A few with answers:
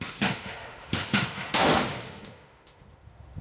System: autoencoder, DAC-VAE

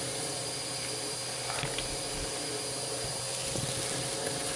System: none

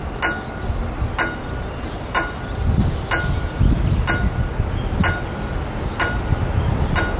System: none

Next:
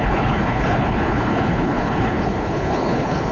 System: codec, HILCodec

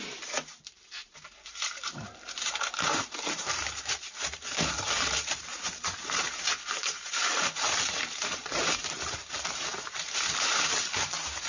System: vocoder, BigVGAN v2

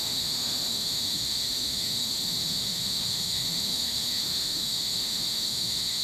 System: autoencoder, DAC-VAE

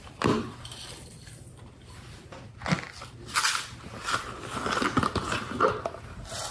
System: none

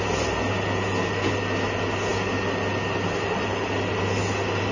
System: none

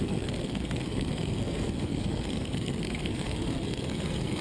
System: codec, SNAC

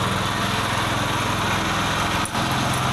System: none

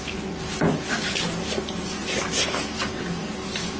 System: none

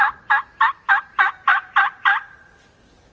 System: none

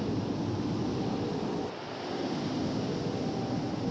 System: none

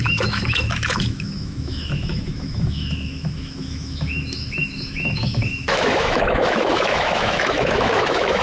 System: autoencoder, DAC-VAE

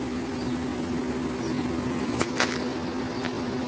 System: none